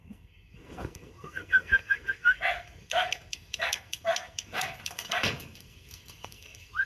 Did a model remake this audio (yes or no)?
yes